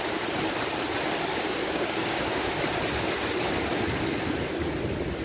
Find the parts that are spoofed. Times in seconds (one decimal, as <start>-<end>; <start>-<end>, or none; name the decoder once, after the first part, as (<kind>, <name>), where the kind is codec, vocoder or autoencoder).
1.3-2.5 (codec, DAC)